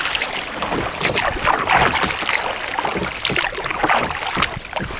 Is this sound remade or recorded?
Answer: recorded